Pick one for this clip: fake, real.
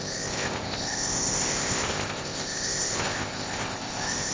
fake